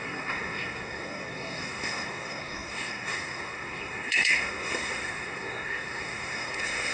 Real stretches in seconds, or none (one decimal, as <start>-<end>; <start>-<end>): none